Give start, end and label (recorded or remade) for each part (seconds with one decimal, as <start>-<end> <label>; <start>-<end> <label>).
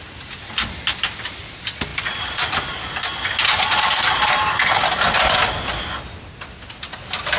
0.0-7.4 recorded